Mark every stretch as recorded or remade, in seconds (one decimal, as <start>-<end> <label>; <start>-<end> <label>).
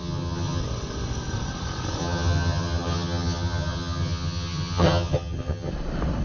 0.0-0.6 remade; 0.6-2.0 recorded; 2.0-5.7 remade; 5.7-6.2 recorded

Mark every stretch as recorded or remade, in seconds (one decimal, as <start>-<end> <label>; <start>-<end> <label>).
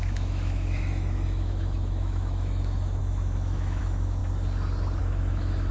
0.0-4.2 remade; 4.2-5.0 recorded; 5.0-5.7 remade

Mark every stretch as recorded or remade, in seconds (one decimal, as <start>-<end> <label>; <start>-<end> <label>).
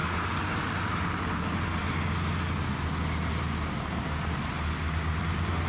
0.0-5.7 recorded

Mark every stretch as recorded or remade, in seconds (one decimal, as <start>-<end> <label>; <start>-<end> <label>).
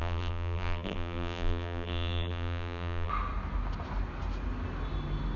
0.0-3.1 remade; 3.1-5.4 recorded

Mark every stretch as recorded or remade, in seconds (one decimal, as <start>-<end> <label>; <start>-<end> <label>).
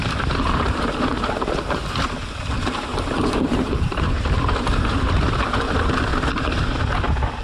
0.0-1.8 remade; 1.8-2.3 recorded; 2.3-6.1 remade; 6.1-7.4 recorded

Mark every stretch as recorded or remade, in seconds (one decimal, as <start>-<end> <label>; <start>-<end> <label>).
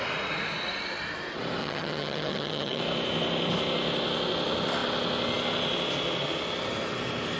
0.0-1.6 recorded; 1.6-2.8 remade; 2.8-7.4 recorded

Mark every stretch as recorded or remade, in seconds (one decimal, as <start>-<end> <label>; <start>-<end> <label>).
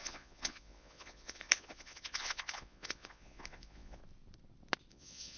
0.0-4.0 remade; 4.0-4.9 recorded; 4.9-5.4 remade